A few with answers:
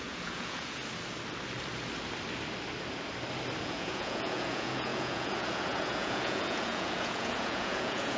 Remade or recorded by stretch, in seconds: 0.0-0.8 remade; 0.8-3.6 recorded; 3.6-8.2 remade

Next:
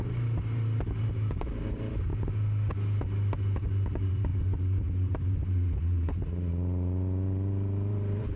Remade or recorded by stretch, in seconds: 0.0-2.1 remade; 2.1-3.7 recorded; 3.7-8.4 remade

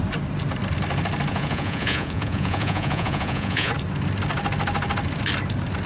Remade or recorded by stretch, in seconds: 0.0-1.3 recorded; 1.3-3.7 remade; 3.7-5.9 recorded

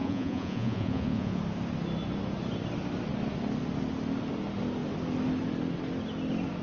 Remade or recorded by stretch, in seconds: 0.0-1.4 remade; 1.4-6.6 recorded

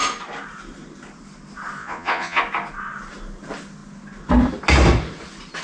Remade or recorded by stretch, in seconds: 0.0-1.8 recorded; 1.8-2.4 remade; 2.4-5.6 recorded

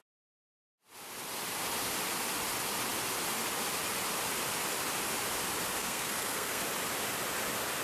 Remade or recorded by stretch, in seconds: 0.0-5.8 recorded; 5.8-6.6 remade; 6.6-7.8 recorded

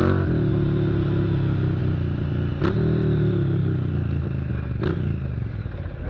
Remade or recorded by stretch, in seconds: 0.0-6.1 recorded